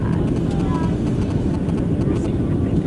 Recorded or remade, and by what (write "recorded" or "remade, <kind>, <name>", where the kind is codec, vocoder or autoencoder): recorded